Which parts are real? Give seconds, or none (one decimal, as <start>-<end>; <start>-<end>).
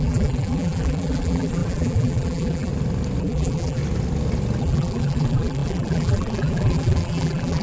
2.7-3.2; 3.8-4.6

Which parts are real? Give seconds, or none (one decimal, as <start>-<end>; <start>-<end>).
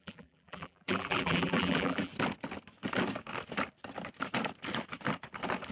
2.1-5.7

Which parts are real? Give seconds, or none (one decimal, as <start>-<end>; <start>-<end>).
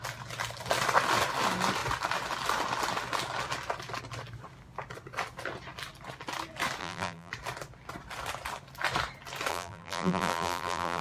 0.0-6.8; 7.3-9.5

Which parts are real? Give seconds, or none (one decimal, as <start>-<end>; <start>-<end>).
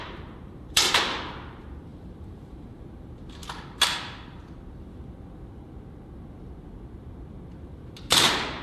3.4-7.6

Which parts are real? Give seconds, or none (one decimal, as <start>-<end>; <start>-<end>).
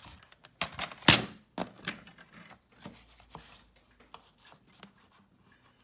0.0-1.6; 2.8-5.8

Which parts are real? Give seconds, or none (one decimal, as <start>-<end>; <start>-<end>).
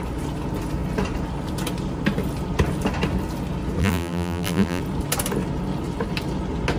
0.0-3.8; 4.8-6.8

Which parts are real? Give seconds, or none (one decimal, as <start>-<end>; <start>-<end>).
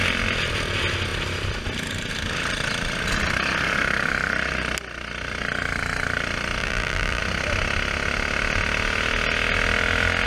0.0-6.6; 7.2-10.3